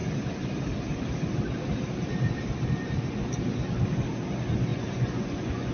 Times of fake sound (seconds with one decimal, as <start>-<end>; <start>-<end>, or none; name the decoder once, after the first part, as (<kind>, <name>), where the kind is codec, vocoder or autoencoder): 4.7-5.7 (vocoder, Vocos)